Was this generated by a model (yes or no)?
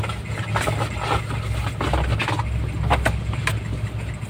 no